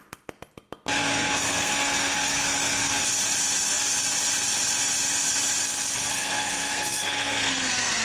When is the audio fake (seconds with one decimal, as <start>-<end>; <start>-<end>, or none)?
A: 1.0-3.0; 6.1-8.0